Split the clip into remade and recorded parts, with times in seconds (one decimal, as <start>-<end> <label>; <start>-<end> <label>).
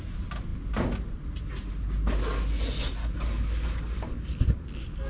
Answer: 0.0-3.0 recorded; 3.0-4.3 remade; 4.3-5.1 recorded